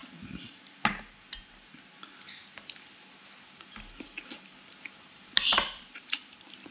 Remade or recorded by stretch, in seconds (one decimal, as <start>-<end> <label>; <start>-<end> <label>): 0.0-4.0 recorded; 4.0-6.7 remade